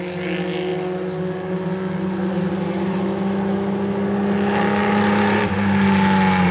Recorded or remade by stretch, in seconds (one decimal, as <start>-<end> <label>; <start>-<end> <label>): 0.0-4.8 recorded; 4.8-5.4 remade; 5.4-6.5 recorded